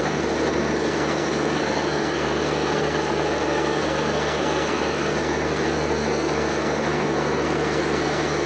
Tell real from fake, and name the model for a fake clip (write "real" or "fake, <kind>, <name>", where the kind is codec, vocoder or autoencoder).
fake, codec, SNAC